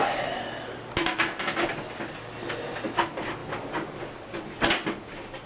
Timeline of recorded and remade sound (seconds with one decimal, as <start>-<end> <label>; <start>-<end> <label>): 0.0-5.5 recorded